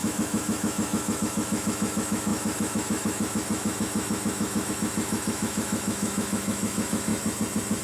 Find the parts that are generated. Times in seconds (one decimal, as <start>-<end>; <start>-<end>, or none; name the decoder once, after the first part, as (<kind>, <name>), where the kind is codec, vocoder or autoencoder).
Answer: 0.0-7.1 (autoencoder, DAC-VAE)